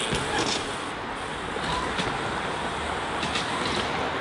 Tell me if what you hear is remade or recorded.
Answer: recorded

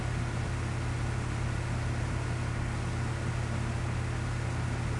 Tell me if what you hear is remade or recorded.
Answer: recorded